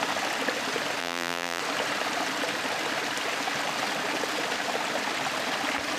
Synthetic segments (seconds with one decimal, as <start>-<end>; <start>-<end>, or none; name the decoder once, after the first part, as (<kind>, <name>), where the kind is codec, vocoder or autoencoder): 1.0-1.6 (vocoder, BigVGAN v2)